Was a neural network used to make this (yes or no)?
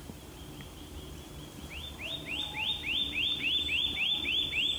yes